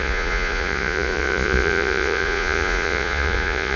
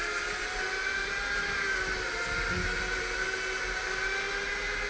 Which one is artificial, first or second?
first